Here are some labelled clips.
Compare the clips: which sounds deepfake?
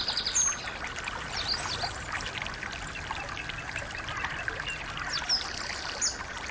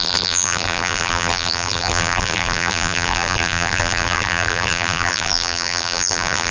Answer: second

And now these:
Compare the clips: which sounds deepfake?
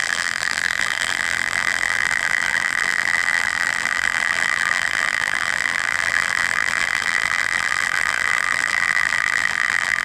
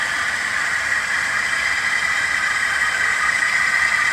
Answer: first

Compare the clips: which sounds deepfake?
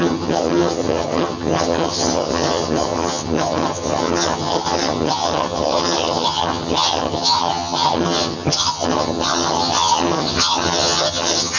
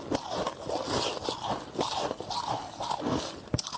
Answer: first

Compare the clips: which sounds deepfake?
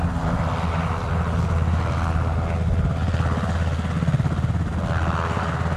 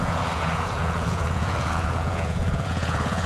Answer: second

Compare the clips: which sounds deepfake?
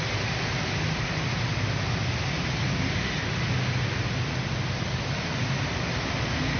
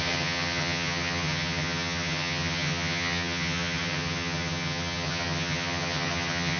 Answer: second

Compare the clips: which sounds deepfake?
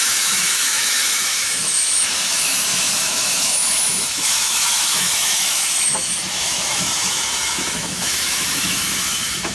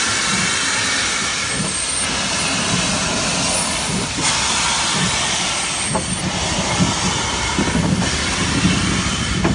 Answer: first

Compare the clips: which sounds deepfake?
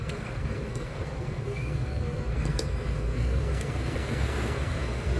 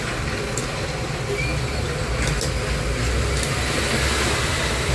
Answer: first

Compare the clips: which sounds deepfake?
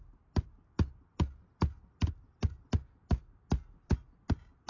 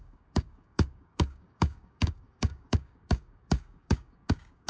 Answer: second